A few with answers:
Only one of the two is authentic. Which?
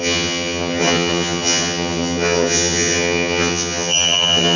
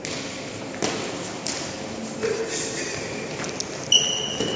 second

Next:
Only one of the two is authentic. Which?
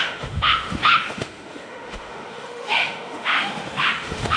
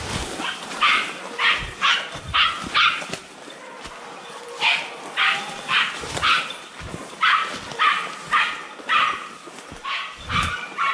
second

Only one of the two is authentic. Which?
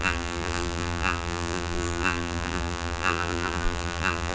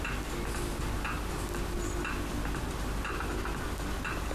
second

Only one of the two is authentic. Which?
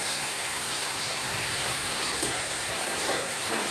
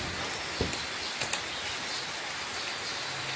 second